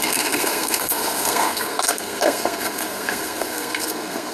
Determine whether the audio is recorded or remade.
remade